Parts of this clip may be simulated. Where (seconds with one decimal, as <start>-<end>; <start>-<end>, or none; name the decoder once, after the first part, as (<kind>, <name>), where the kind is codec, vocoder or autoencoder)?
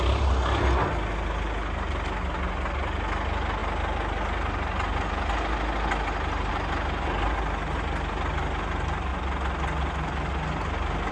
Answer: none